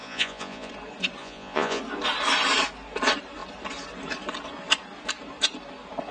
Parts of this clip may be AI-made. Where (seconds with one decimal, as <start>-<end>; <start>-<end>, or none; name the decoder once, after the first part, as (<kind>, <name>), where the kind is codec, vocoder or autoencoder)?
0.0-0.7 (vocoder, Vocos); 1.2-1.8